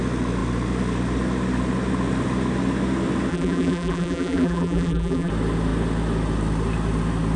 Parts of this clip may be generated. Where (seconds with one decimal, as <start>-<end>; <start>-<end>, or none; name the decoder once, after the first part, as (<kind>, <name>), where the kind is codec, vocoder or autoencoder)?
3.3-5.3 (vocoder, BigVGAN v2)